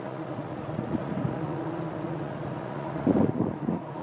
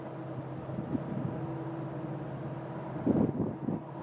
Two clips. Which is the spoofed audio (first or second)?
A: first